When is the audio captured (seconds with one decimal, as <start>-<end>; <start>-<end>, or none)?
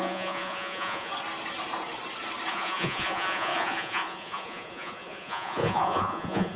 1.1-2.5